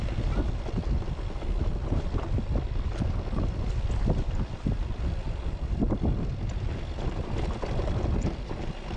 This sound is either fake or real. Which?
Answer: real